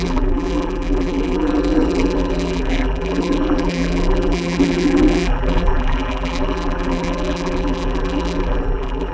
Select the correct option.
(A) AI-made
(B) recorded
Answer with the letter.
A